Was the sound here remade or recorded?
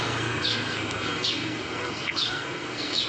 remade